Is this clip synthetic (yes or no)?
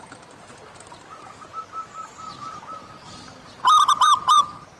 no